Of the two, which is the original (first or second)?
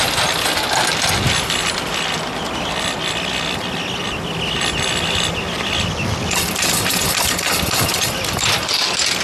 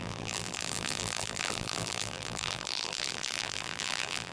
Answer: first